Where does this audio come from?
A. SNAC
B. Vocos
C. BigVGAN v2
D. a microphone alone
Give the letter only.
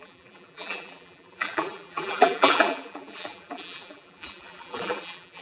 C